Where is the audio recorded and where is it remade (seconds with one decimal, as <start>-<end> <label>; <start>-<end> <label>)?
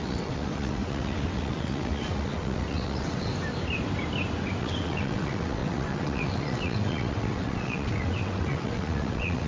0.0-3.3 remade; 3.3-4.6 recorded; 4.6-9.5 remade